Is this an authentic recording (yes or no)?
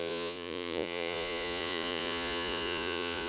no